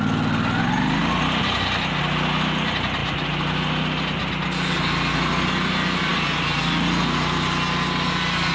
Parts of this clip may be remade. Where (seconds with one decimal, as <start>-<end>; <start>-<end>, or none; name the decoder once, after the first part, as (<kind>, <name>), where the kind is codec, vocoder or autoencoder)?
none